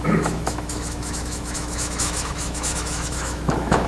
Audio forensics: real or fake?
fake